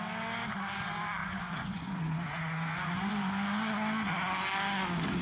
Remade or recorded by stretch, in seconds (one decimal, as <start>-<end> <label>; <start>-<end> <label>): 0.0-1.2 recorded; 1.2-3.1 remade; 3.1-5.2 recorded